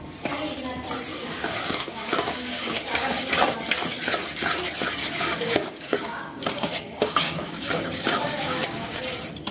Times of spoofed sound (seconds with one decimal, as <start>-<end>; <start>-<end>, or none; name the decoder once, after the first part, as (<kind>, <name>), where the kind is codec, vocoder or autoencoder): 1.1-3.3 (codec, DAC); 5.0-9.0